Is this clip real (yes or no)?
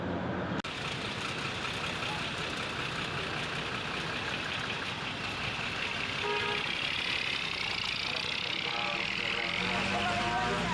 yes